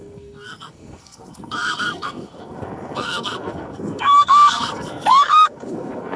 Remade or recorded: remade